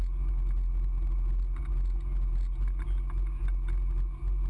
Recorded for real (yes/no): yes